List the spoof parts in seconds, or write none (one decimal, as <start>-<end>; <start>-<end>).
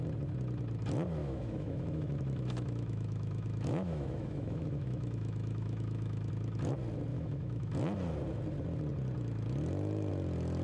1.2-6.3; 7.1-7.7